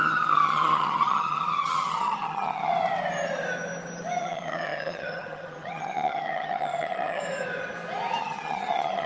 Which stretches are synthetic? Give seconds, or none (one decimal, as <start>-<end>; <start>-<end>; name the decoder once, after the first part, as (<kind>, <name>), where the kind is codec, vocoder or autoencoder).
0.0-2.7 (vocoder, HiFi-GAN); 4.2-7.2; 8.2-9.1